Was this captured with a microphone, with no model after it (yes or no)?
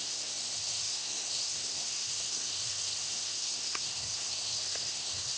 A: no